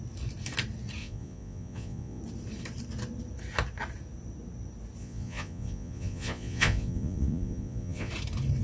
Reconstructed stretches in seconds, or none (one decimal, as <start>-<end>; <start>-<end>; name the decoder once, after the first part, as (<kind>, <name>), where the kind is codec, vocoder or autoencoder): 1.0-2.2 (vocoder, Vocos); 5.0-8.1